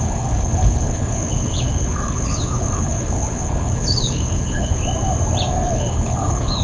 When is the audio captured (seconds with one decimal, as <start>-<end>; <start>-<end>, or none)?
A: 4.8-5.7